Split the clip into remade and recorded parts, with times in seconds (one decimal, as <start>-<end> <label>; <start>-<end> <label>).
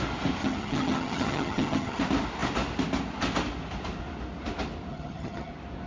0.0-0.4 recorded; 0.4-2.0 remade; 2.0-4.9 recorded; 4.9-5.5 remade; 5.5-5.9 recorded